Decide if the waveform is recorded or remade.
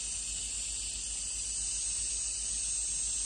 recorded